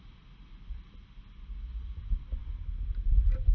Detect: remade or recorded recorded